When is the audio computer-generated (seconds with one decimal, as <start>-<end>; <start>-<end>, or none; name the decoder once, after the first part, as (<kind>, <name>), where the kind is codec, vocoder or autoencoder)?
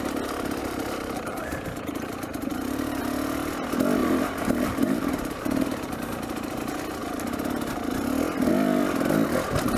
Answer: 0.6-3.0 (vocoder, BigVGAN v2); 4.0-6.6